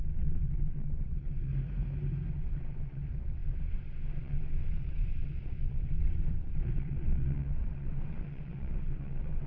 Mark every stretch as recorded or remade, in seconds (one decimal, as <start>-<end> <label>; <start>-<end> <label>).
0.0-1.5 remade; 1.5-2.3 recorded; 2.3-9.5 remade